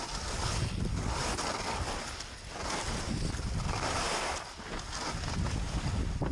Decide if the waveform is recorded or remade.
recorded